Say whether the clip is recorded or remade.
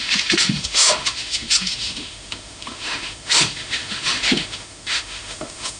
remade